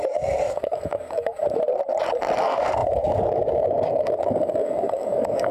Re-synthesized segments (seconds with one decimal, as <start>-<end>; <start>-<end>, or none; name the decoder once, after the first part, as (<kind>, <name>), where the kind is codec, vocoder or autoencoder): 0.0-1.4 (codec, DAC); 2.4-5.5